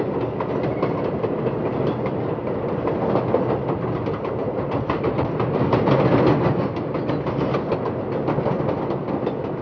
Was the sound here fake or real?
real